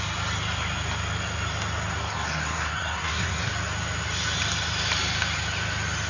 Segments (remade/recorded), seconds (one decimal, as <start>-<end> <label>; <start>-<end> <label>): 0.0-2.0 recorded; 2.0-3.5 remade; 3.5-6.1 recorded